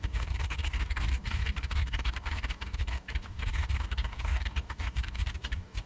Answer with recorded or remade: remade